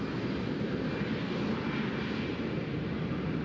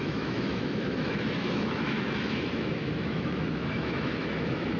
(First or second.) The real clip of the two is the first